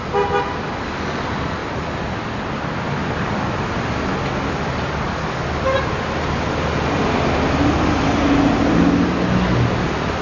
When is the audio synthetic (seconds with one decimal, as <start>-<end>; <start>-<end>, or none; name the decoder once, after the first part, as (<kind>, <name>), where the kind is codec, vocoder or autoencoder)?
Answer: none